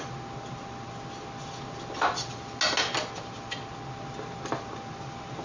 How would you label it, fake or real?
real